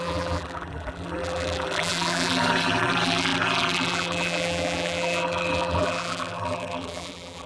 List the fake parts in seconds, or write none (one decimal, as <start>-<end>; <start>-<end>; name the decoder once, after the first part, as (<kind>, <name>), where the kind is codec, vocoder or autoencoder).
0.0-7.5 (vocoder, BigVGAN v2)